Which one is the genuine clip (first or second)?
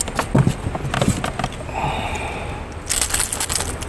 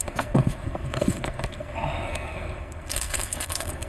first